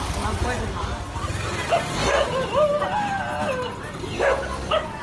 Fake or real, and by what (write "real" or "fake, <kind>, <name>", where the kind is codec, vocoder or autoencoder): real